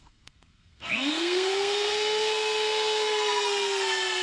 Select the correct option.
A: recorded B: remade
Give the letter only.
B